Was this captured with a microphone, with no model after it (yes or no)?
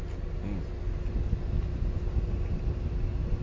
yes